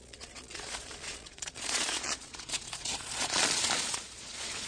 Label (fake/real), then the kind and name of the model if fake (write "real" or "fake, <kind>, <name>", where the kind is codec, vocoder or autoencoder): fake, vocoder, Vocos